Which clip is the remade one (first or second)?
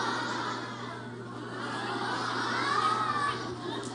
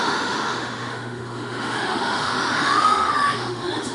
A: second